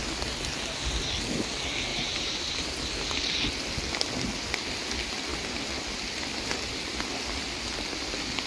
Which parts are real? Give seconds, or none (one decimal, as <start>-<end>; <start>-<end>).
0.0-1.9; 2.6-8.5